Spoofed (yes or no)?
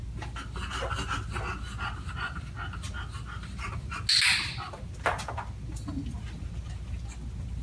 no